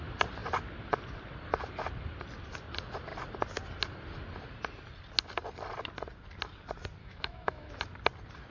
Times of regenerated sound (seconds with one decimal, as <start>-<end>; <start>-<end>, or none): 7.0-7.7

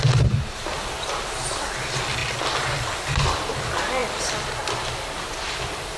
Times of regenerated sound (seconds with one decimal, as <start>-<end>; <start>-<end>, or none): none

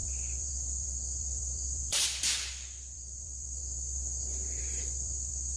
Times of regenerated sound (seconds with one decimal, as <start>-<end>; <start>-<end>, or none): 0.0-3.6; 4.6-5.6

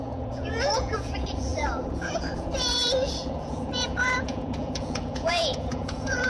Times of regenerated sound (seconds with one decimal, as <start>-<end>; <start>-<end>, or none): 0.0-6.3

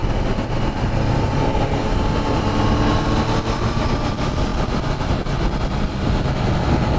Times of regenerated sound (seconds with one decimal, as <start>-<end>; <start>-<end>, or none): none

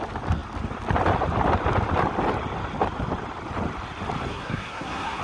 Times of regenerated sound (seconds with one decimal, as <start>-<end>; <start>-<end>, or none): 4.3-5.2

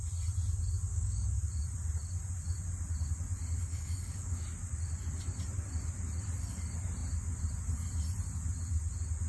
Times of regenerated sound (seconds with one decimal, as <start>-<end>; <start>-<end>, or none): 0.9-1.4; 3.6-4.4

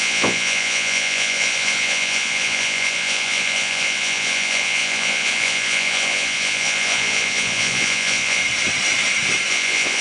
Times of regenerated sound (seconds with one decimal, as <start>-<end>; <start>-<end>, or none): 0.0-8.4; 9.5-10.0